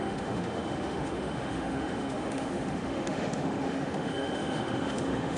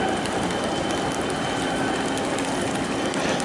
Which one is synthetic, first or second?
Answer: first